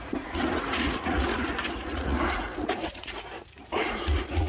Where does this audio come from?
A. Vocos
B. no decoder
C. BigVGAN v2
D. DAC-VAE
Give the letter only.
A